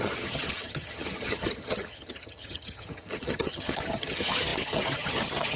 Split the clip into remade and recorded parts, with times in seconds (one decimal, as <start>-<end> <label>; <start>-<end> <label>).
0.0-5.6 remade